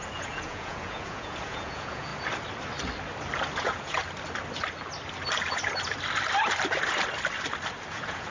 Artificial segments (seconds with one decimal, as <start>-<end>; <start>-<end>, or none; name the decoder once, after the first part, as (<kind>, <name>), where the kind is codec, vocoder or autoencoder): 0.0-2.1 (vocoder, Vocos); 3.6-4.0; 7.9-8.3